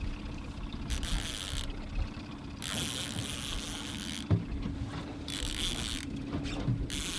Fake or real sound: real